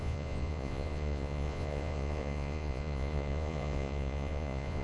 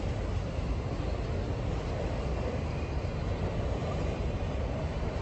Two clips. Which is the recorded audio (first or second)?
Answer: second